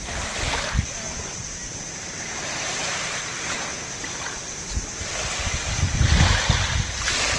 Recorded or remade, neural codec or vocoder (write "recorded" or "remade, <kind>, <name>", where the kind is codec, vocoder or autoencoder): recorded